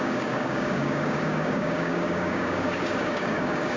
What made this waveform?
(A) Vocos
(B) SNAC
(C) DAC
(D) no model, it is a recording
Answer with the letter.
C